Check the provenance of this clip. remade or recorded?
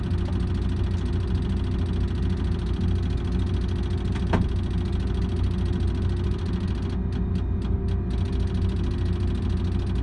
recorded